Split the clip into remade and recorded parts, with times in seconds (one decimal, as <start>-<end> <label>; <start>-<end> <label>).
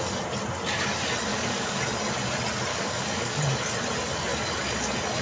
0.0-1.3 recorded; 1.3-1.8 remade; 1.8-2.7 recorded; 2.7-3.4 remade; 3.4-5.2 recorded